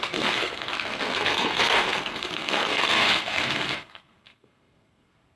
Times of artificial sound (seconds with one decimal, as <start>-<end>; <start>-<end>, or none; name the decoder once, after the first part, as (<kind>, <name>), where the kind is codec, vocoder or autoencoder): 0.0-5.4 (codec, SNAC)